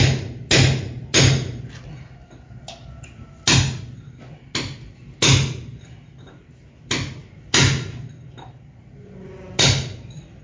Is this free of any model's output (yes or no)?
yes